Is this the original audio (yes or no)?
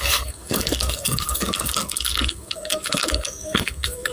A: no